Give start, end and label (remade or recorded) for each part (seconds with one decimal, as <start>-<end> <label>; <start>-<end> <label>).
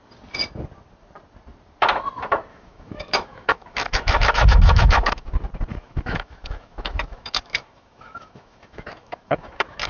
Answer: 0.0-2.5 recorded; 2.5-5.3 remade; 5.3-5.7 recorded; 5.7-9.9 remade